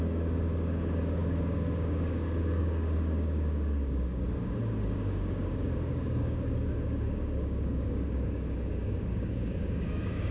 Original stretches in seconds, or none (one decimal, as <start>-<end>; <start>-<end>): none